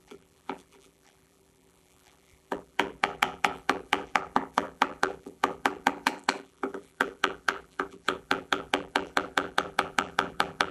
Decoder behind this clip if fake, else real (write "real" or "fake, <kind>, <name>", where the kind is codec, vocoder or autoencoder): fake, vocoder, BigVGAN v2